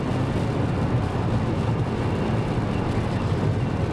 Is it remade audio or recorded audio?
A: recorded